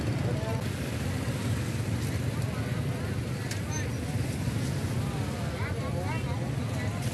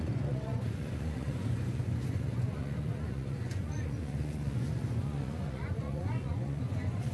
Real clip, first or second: first